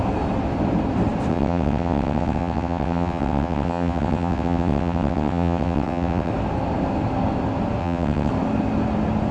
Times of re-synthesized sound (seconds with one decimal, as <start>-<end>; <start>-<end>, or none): 1.3-6.3; 7.8-8.3